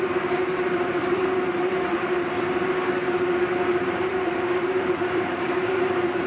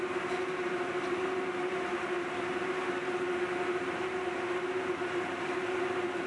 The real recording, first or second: second